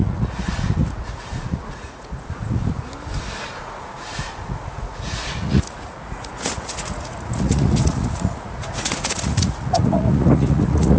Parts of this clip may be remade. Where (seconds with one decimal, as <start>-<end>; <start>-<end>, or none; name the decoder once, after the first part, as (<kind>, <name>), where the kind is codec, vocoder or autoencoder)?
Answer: 0.0-2.6 (vocoder, Vocos); 3.6-11.0